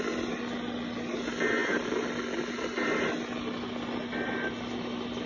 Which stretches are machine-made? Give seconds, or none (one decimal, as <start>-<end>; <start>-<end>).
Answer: none